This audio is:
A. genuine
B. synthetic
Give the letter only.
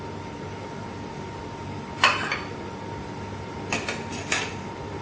A